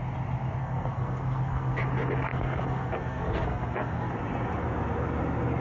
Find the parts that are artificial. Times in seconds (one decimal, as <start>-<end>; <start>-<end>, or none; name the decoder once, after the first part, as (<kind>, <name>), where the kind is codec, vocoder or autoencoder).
0.6-1.8 (codec, SNAC); 2.3-4.1